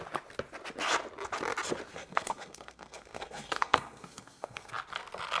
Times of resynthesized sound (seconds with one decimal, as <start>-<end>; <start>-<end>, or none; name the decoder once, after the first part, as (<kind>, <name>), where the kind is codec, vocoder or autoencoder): 1.9-4.7 (codec, SNAC)